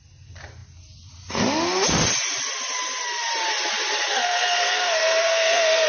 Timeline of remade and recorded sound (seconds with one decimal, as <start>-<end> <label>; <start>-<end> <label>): 0.0-4.1 recorded; 4.1-5.9 remade